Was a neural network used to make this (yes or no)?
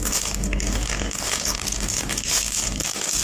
yes